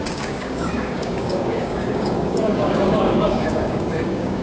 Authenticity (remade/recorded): remade